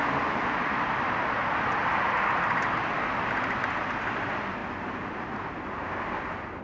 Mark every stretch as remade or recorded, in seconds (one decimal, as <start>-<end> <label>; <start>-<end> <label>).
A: 0.0-6.6 recorded